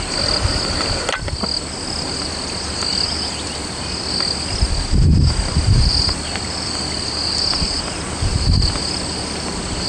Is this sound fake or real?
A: real